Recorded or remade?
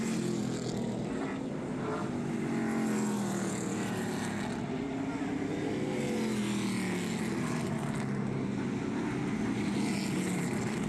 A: recorded